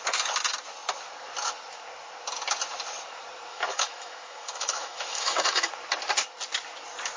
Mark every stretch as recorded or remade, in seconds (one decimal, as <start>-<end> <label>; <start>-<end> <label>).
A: 0.0-3.5 recorded; 3.5-5.7 remade; 5.7-7.2 recorded